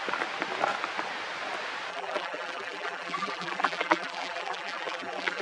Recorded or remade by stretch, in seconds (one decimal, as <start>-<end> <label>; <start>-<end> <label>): 0.0-1.9 recorded; 1.9-5.4 remade